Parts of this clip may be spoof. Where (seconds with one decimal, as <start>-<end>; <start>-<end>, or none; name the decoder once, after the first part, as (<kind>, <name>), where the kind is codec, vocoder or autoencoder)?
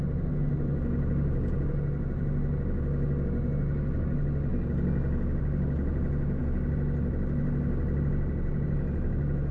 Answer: none